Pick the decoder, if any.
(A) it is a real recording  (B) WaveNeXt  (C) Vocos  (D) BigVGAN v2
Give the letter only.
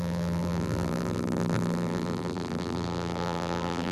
D